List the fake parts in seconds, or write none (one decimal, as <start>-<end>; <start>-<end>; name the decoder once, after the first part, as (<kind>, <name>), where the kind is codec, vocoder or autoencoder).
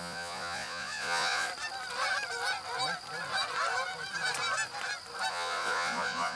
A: 0.0-1.5 (vocoder, Vocos); 5.3-6.4